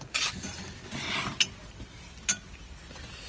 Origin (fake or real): real